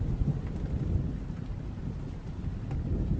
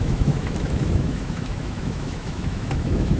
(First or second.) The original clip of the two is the first